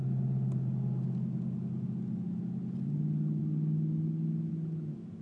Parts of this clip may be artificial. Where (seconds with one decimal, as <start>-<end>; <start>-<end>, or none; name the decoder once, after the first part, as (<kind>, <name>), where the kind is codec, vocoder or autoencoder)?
none